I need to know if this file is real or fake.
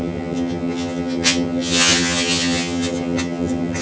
fake